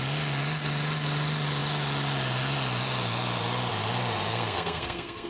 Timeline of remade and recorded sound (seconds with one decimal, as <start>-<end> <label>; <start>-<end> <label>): 0.0-4.3 recorded; 4.3-5.3 remade